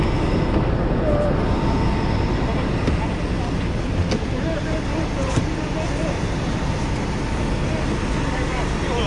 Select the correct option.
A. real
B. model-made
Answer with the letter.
A